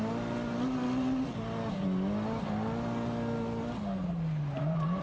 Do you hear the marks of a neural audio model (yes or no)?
no